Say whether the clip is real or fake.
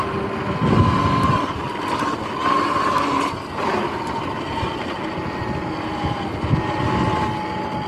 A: real